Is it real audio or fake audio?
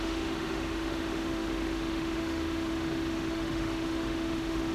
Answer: fake